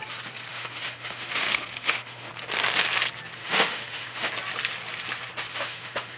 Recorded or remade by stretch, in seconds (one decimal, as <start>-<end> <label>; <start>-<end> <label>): 0.0-0.5 recorded; 0.5-2.3 remade; 2.3-3.4 recorded; 3.4-4.3 remade; 4.3-5.5 recorded; 5.5-6.2 remade